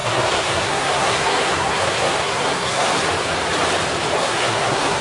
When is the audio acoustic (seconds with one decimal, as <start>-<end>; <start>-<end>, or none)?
3.0-4.2